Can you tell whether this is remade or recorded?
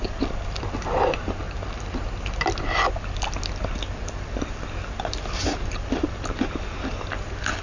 recorded